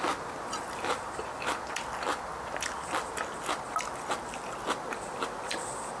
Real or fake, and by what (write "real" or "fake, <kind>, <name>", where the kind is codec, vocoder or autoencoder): real